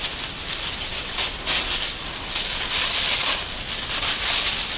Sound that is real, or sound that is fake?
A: real